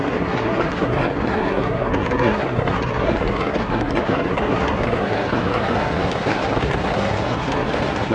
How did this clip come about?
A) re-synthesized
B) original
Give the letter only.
A